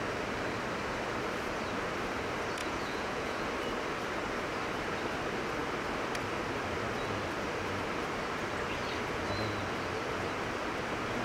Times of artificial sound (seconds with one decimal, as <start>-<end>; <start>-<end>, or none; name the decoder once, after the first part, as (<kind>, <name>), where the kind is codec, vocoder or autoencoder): 2.6-3.5 (vocoder, Vocos)